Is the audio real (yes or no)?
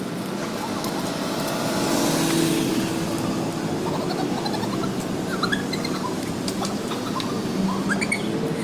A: yes